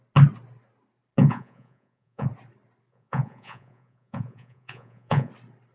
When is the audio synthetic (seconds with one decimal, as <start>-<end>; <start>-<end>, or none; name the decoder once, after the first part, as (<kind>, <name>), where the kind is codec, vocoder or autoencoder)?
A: 1.2-2.3 (vocoder, Vocos); 2.9-5.3